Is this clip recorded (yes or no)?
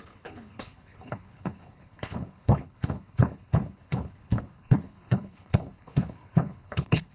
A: no